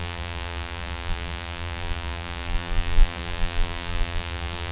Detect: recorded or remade remade